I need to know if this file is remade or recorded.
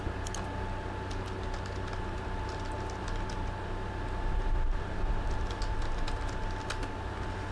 recorded